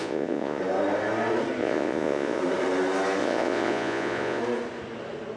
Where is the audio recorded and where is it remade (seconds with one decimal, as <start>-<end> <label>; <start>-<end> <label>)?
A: 0.0-0.6 remade; 0.6-1.6 recorded; 1.6-2.4 remade; 2.4-3.2 recorded; 3.2-4.4 remade; 4.4-5.4 recorded